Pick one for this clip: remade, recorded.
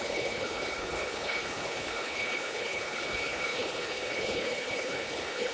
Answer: remade